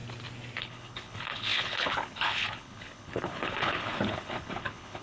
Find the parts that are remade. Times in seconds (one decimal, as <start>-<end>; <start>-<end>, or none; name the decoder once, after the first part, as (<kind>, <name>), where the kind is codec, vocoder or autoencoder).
0.6-5.0 (codec, HILCodec)